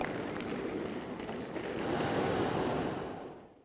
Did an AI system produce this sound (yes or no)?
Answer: no